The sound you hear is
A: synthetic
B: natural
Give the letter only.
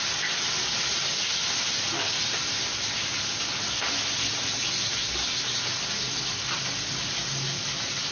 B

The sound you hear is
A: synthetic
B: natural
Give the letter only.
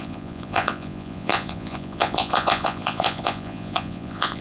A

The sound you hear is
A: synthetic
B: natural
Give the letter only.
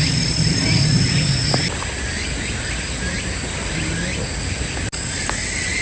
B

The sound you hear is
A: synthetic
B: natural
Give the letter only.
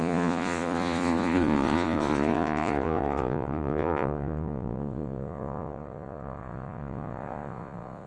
A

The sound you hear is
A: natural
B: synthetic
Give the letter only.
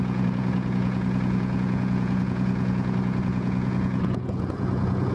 B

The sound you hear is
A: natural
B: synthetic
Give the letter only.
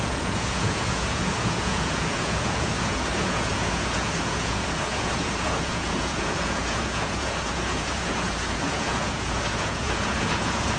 B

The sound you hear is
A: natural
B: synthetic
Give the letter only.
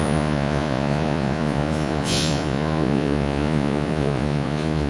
B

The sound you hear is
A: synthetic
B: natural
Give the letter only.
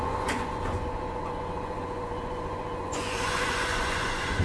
A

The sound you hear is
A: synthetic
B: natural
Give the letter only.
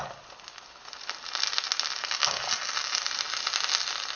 B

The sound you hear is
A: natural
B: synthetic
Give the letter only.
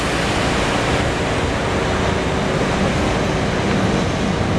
A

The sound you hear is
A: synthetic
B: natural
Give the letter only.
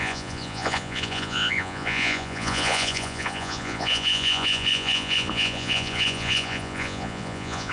A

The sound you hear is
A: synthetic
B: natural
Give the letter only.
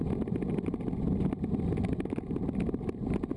B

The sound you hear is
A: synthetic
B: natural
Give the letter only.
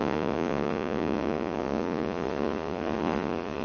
A